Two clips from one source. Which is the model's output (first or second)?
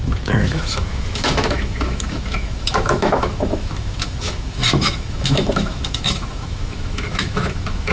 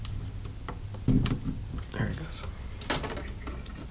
first